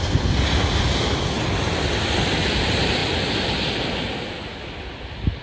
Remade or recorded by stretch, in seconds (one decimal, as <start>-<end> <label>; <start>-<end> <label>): 0.0-5.4 recorded